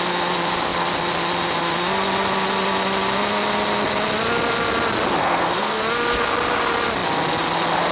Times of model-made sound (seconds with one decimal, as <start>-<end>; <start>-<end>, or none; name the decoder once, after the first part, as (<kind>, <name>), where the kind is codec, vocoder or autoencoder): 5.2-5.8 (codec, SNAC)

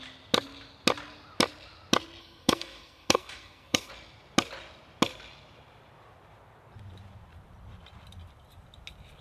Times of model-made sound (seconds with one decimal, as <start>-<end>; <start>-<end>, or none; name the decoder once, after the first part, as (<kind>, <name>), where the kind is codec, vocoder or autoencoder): 2.2-3.9 (codec, SNAC)

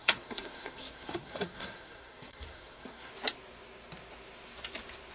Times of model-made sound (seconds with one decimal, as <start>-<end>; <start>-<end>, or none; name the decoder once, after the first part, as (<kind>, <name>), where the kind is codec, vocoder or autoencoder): 0.0-3.1 (codec, SNAC)

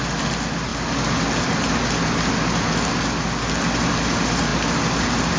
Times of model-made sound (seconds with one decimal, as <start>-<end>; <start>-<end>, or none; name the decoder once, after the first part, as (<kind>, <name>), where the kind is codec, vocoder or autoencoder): none

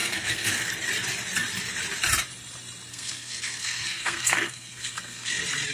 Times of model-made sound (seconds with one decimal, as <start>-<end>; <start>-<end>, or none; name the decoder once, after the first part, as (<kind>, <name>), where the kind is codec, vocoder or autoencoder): 0.0-0.7 (codec, SNAC); 2.9-5.3

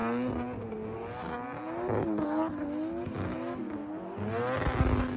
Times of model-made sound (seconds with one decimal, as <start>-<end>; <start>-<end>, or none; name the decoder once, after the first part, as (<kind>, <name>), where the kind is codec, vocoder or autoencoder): none

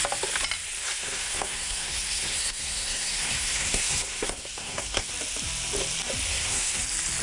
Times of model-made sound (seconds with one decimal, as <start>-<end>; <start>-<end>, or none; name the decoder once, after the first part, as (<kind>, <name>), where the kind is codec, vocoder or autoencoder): 0.8-5.1 (codec, SNAC); 6.3-6.8